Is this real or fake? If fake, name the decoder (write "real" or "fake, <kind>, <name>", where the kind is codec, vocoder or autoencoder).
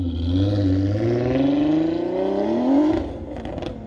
real